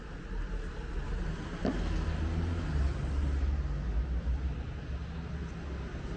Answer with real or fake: real